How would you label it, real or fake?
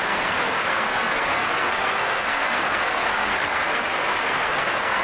fake